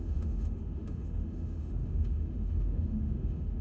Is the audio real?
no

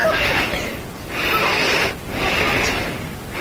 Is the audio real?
yes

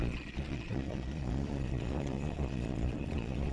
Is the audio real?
no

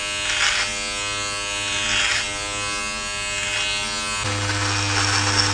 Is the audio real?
yes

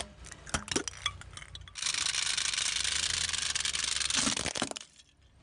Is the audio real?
yes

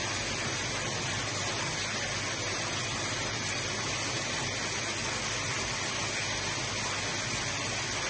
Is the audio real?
yes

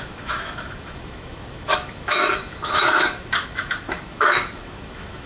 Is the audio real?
no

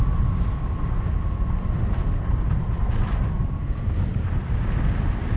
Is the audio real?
yes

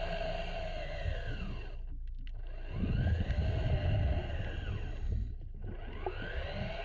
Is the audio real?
yes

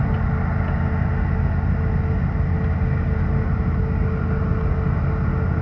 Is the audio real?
yes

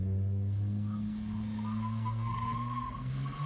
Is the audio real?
no